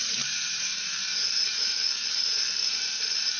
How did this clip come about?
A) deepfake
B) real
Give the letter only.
A